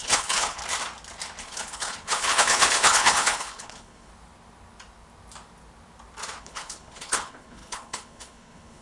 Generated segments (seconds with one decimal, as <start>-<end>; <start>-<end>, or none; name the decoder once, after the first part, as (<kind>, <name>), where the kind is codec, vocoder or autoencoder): 0.0-0.6 (codec, HILCodec); 1.4-4.1; 6.4-8.8